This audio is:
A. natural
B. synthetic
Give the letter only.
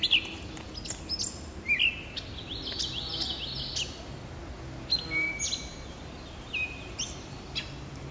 A